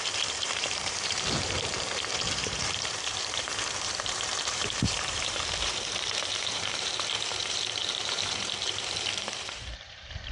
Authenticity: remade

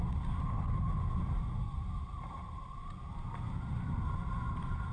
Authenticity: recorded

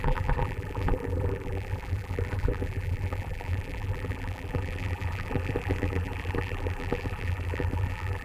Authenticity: remade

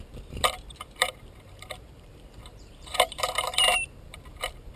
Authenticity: remade